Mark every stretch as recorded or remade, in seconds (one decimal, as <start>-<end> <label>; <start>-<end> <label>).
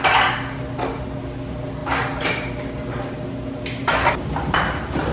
0.0-5.1 recorded